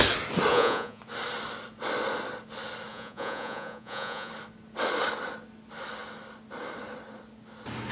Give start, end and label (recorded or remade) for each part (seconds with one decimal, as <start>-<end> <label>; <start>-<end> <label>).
0.0-0.5 recorded; 0.5-1.0 remade; 1.0-2.9 recorded; 2.9-4.3 remade; 4.3-7.9 recorded